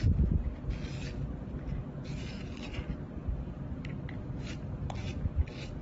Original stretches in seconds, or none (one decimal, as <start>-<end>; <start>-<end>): 0.0-5.8